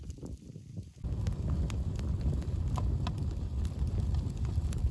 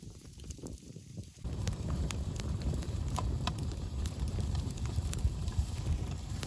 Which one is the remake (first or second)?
second